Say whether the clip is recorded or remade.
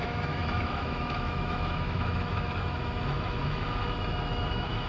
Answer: remade